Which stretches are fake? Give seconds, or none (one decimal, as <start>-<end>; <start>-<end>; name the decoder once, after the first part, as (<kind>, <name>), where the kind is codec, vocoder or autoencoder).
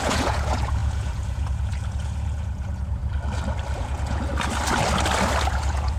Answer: 0.0-3.0 (vocoder, Vocos); 3.8-4.3; 5.5-6.0